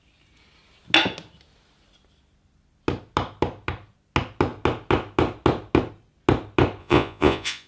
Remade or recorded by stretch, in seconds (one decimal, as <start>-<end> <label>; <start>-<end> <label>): 0.0-6.8 recorded; 6.8-7.7 remade